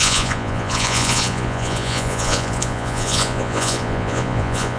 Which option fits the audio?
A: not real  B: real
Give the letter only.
A